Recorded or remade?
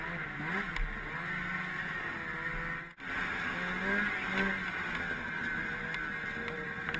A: recorded